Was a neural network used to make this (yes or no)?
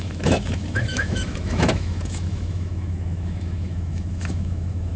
yes